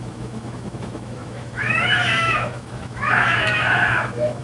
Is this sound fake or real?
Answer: fake